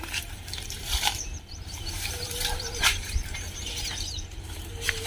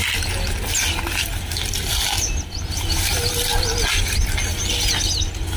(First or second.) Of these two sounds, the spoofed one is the first